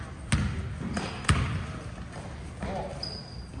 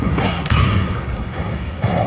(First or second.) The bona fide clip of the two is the first